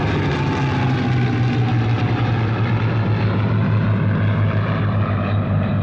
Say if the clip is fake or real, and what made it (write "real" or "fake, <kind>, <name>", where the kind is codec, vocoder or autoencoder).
real